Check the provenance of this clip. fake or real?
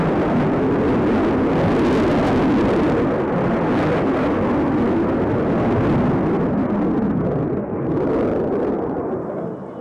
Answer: real